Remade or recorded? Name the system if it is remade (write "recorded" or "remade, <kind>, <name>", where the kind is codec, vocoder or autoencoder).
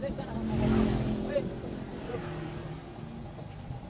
recorded